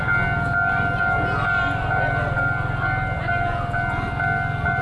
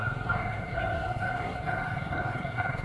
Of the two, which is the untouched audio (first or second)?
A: first